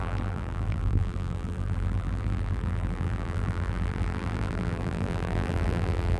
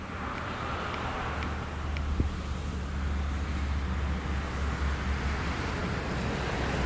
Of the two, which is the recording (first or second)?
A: second